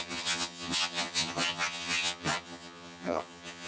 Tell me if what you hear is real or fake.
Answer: fake